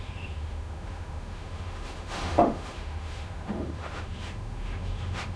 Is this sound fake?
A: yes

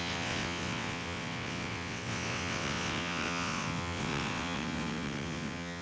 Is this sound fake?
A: yes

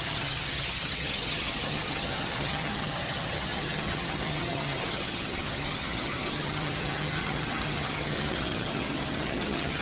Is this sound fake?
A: yes